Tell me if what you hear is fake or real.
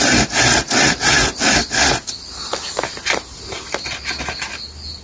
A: real